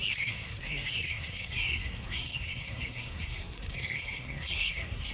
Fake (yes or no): yes